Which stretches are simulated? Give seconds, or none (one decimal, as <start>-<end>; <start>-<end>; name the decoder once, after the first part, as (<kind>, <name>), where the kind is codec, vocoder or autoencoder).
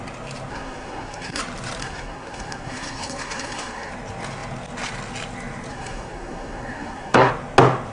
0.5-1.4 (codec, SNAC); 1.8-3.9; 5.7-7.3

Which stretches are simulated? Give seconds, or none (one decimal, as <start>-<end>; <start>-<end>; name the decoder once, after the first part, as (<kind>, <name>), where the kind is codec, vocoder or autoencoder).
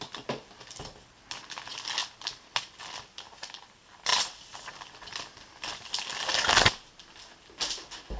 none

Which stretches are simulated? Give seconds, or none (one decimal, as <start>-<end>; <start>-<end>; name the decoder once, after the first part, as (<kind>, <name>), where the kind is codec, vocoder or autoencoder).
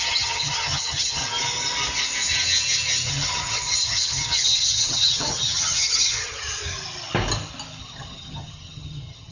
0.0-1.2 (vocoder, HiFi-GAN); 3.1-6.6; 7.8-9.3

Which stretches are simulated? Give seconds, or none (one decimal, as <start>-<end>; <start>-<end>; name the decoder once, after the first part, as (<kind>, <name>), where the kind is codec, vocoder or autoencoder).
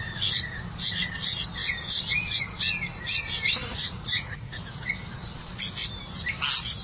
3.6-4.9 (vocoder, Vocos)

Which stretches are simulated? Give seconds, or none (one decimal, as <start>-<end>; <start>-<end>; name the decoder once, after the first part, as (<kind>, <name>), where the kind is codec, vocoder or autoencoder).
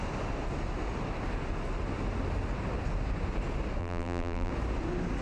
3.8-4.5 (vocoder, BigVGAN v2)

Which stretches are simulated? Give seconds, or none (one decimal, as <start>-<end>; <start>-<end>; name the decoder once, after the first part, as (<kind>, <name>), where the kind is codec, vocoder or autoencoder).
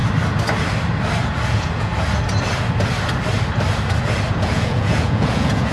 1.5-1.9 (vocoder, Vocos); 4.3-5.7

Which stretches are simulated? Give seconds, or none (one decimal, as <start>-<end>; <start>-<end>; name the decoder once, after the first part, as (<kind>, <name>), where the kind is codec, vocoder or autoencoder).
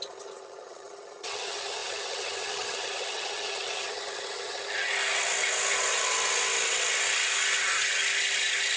0.0-4.9 (vocoder, HiFi-GAN); 7.6-8.0